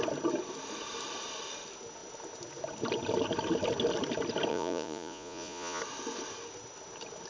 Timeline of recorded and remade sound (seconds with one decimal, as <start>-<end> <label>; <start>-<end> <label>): 0.0-4.5 recorded; 4.5-5.8 remade; 5.8-7.3 recorded